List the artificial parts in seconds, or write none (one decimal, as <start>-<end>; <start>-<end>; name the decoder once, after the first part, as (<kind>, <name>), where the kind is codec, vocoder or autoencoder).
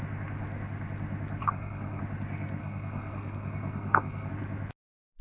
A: 1.4-2.0 (codec, SNAC); 2.6-4.3